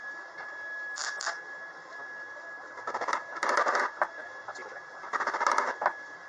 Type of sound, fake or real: real